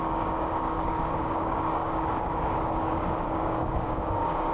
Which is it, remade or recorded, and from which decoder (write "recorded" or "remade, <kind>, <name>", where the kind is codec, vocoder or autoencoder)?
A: remade, codec, DAC